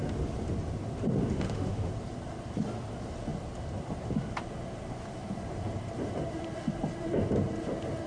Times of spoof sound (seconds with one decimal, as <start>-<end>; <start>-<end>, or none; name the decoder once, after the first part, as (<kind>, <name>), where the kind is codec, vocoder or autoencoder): 1.3-1.9 (autoencoder, DAC-VAE)